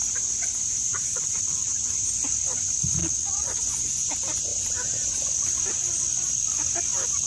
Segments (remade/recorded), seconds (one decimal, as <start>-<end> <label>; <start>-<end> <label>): 0.0-0.9 recorded; 0.9-1.4 remade; 1.4-3.0 recorded; 3.0-3.6 remade; 3.6-7.3 recorded